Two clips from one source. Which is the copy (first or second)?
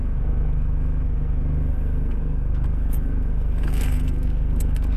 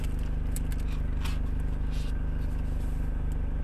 first